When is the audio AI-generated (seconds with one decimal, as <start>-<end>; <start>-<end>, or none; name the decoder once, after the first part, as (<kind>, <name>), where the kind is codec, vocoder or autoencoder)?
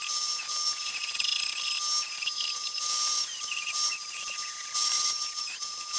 0.0-1.3 (vocoder, BigVGAN v2); 2.0-6.0